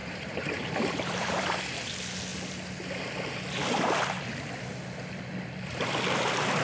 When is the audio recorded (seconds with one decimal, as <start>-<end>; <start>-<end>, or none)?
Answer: 1.6-6.6

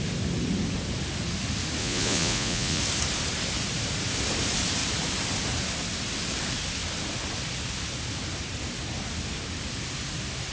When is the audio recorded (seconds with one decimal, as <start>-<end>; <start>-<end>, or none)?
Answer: 0.0-1.8; 2.8-10.5

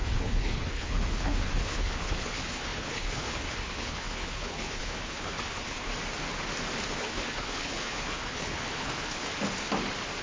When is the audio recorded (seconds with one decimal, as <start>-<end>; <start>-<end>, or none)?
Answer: 5.9-6.9; 9.3-10.2